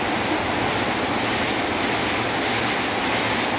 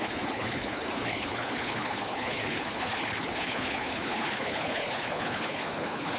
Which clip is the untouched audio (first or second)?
first